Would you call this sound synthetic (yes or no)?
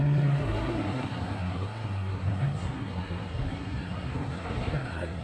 yes